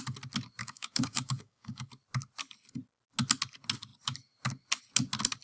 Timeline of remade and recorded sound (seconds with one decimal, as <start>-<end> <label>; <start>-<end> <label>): 0.0-0.6 recorded; 0.6-1.9 remade; 1.9-5.4 recorded